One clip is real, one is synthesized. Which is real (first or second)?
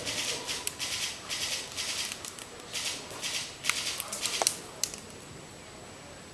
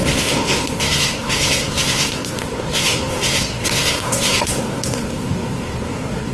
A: first